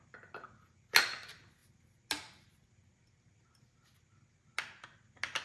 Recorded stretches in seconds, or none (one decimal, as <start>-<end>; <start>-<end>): 0.0-5.4